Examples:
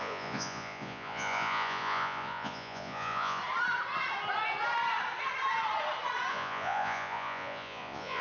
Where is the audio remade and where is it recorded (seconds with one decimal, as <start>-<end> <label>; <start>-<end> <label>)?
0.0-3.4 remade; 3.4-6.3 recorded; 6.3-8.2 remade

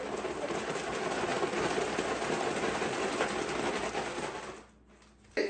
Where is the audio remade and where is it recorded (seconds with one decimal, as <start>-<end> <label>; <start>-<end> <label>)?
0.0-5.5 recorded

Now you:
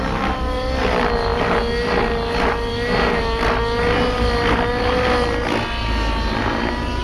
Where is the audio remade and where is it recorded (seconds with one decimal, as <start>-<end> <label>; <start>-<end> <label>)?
0.0-7.0 recorded

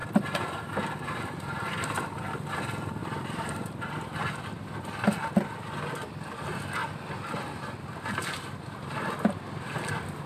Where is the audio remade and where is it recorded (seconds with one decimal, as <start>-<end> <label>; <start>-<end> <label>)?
0.0-2.0 remade; 2.0-3.0 recorded; 3.0-4.3 remade; 4.3-10.3 recorded

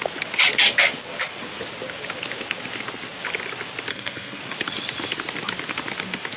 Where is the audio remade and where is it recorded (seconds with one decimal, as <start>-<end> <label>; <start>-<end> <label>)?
0.0-3.9 recorded; 3.9-4.4 remade; 4.4-6.4 recorded

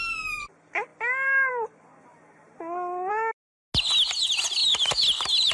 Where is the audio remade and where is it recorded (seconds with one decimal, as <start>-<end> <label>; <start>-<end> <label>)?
0.0-5.5 recorded